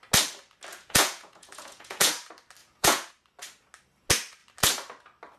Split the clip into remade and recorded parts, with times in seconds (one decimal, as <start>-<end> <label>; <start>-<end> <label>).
0.0-0.7 recorded; 0.7-2.1 remade; 2.1-2.6 recorded; 2.6-3.1 remade; 3.1-5.4 recorded